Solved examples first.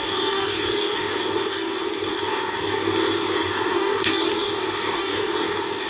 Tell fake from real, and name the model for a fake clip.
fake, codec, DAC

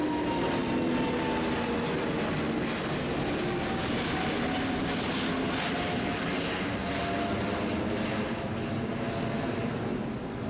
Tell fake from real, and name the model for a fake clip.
real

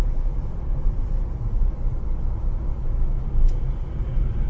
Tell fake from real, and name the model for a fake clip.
real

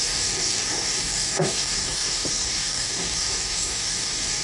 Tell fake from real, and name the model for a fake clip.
fake, codec, DAC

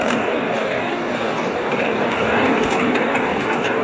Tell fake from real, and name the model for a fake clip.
fake, codec, DAC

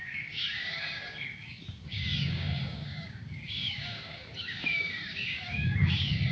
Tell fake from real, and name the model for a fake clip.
fake, codec, DAC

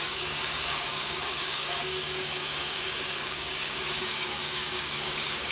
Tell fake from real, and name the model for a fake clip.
fake, codec, DAC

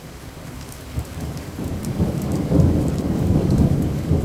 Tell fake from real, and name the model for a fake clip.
fake, codec, DAC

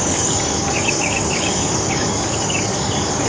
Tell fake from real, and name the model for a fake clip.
fake, codec, DAC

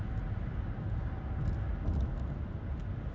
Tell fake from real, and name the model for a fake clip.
real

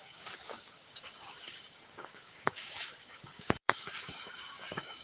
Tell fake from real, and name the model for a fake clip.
fake, codec, DAC